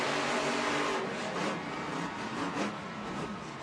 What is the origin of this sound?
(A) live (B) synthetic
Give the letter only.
A